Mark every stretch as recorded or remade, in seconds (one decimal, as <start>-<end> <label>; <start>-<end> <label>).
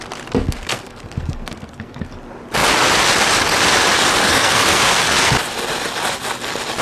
0.0-0.4 recorded; 0.4-2.1 remade; 2.1-4.3 recorded; 4.3-5.3 remade; 5.3-6.8 recorded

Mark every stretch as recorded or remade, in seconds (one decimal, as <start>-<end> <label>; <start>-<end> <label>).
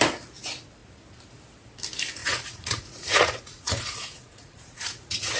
0.0-2.2 recorded; 2.2-5.4 remade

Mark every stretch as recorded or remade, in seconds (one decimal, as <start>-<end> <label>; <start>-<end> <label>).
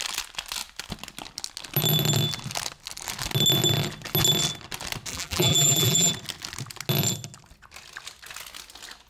0.0-5.1 recorded; 5.1-6.1 remade; 6.1-9.1 recorded